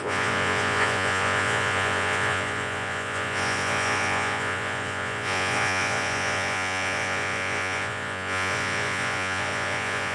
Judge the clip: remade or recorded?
remade